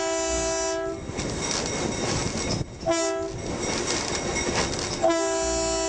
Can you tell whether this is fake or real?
real